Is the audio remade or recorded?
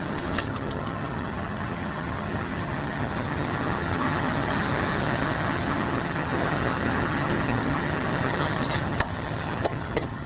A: remade